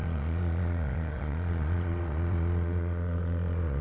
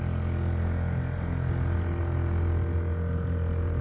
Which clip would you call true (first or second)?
second